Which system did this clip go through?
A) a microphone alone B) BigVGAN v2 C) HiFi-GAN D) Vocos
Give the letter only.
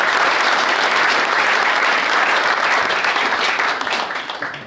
B